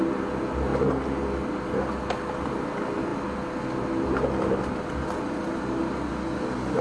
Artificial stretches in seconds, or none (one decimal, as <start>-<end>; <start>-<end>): none